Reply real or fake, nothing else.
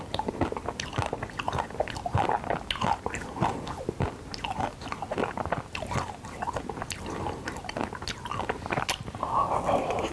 real